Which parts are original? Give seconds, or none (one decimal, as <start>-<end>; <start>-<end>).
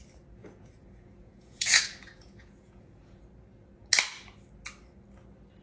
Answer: 0.0-0.4; 3.2-5.6